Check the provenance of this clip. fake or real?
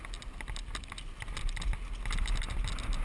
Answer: real